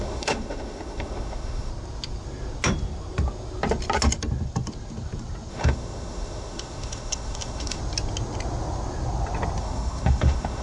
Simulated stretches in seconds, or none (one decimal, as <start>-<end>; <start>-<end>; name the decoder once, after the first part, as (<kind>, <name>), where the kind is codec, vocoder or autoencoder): 0.0-1.7 (autoencoder, DAC-VAE); 5.5-7.8; 9.6-10.6